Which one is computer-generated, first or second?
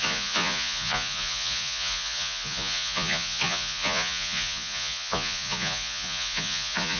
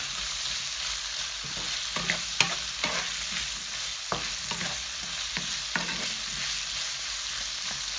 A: first